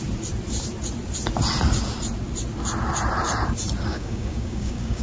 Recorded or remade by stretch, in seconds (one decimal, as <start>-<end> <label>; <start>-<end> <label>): 0.0-3.9 recorded; 3.9-5.0 remade